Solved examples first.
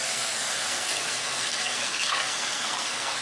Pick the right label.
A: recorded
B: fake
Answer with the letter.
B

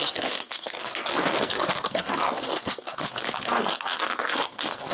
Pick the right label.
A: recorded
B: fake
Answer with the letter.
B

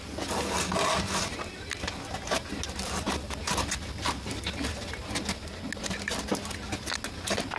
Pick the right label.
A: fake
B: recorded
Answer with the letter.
B